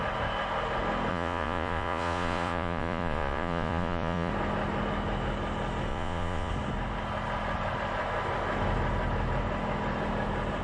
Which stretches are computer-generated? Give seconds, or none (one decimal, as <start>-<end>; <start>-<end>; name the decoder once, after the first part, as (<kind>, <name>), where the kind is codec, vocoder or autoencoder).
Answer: 1.1-4.3 (vocoder, Vocos); 5.9-6.5